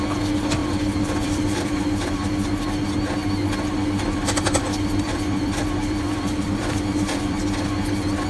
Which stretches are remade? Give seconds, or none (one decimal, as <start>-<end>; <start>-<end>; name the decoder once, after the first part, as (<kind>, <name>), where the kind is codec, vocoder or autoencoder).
0.6-2.2 (vocoder, BigVGAN v2); 3.7-7.4